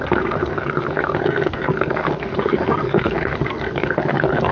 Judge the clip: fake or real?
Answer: fake